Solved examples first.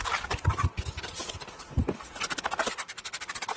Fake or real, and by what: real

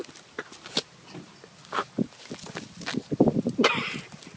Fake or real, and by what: real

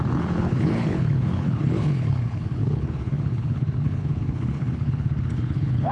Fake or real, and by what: fake, codec, HILCodec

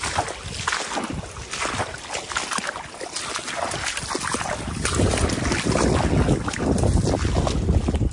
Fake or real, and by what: real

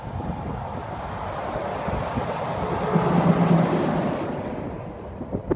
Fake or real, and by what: real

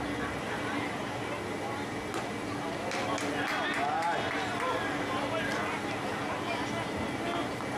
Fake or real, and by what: real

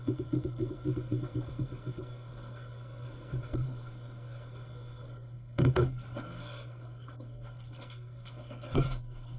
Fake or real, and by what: fake, codec, SNAC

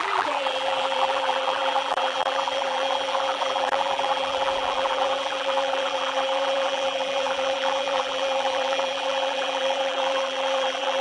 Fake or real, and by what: fake, vocoder, BigVGAN v2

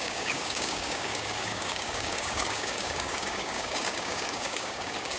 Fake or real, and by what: fake, codec, DAC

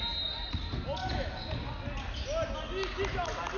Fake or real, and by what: real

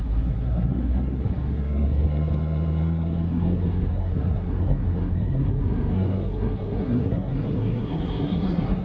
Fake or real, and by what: fake, codec, SNAC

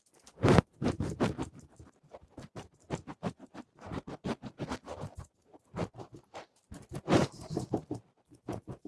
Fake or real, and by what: fake, vocoder, BigVGAN v2